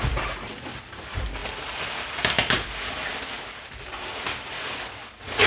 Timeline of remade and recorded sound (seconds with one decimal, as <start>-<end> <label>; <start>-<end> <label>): 0.0-3.1 recorded; 3.1-4.1 remade; 4.1-5.5 recorded

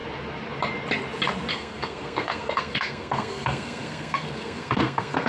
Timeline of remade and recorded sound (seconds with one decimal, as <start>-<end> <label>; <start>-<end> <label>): 0.0-1.5 recorded; 1.5-5.3 remade

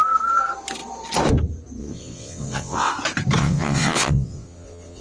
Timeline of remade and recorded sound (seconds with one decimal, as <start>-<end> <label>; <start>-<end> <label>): 0.0-1.8 recorded; 1.8-2.9 remade; 2.9-3.4 recorded; 3.4-5.0 remade

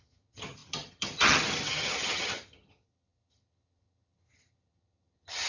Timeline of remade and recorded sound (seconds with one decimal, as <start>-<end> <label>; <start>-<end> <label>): 0.0-5.5 remade

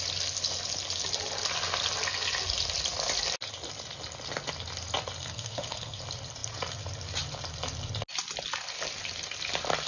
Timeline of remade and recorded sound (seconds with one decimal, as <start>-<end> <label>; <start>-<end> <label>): 0.0-5.2 recorded; 5.2-6.0 remade; 6.0-9.9 recorded